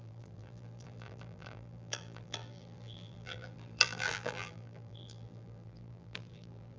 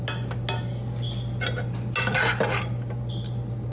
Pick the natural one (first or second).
second